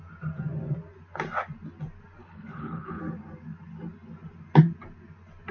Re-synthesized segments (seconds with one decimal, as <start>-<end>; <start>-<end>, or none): 2.2-3.0